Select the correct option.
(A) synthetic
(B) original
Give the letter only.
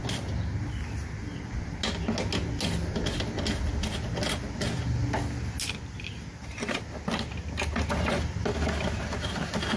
B